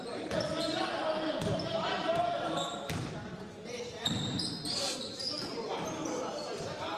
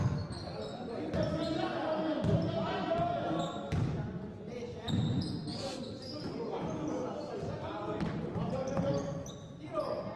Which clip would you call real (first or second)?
second